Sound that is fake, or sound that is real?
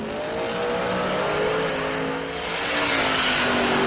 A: real